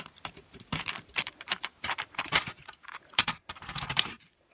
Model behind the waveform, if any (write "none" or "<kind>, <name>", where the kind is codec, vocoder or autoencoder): vocoder, BigVGAN v2